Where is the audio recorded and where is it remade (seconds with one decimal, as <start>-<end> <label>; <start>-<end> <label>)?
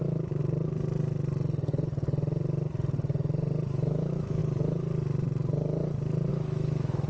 0.0-0.4 remade; 0.4-3.7 recorded; 3.7-4.4 remade; 4.4-6.3 recorded; 6.3-7.1 remade